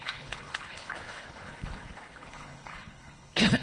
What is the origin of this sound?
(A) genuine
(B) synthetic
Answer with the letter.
B